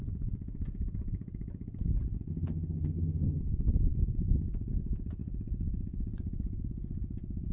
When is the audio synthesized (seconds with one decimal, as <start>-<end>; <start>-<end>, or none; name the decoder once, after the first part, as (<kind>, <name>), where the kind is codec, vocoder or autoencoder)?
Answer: 2.3-3.4 (vocoder, HiFi-GAN)